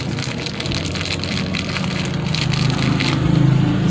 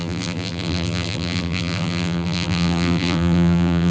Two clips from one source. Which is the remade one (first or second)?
second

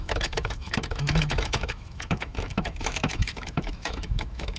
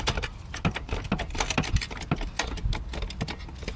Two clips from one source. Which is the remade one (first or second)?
first